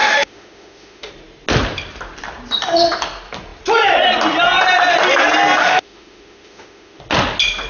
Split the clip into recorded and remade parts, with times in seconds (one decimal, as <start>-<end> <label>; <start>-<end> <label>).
0.0-1.1 remade; 1.1-5.6 recorded; 5.6-7.0 remade; 7.0-7.7 recorded

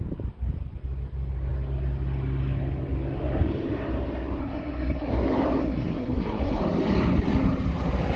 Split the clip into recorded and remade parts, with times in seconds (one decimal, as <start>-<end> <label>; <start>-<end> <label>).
0.0-4.4 recorded; 4.4-5.1 remade; 5.1-5.6 recorded; 5.6-6.6 remade; 6.6-8.2 recorded

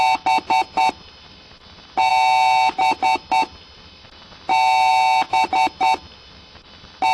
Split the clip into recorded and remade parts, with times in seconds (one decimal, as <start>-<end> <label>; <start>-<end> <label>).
0.0-7.1 recorded

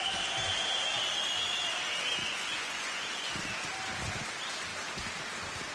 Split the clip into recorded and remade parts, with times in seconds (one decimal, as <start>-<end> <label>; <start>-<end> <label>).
0.0-2.2 recorded; 2.2-3.3 remade; 3.3-5.7 recorded